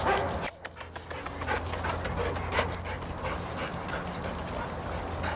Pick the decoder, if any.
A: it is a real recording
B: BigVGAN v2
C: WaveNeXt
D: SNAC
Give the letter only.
A